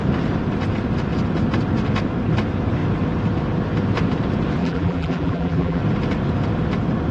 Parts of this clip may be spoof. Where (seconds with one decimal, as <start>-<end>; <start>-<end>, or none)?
4.6-5.8